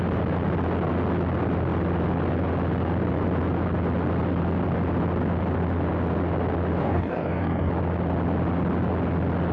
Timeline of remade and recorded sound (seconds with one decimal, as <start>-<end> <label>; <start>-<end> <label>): 0.0-6.8 recorded; 6.8-7.7 remade; 7.7-9.5 recorded